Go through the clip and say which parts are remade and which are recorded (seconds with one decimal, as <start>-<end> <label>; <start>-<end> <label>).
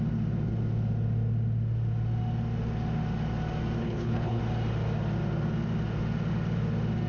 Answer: 0.0-3.8 recorded; 3.8-4.4 remade; 4.4-7.1 recorded